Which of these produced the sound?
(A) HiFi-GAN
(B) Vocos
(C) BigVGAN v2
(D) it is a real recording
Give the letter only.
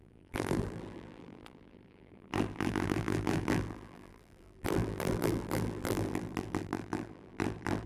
C